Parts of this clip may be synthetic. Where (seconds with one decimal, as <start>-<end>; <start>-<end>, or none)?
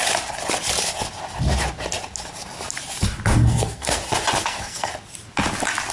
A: 3.5-4.0; 4.4-4.9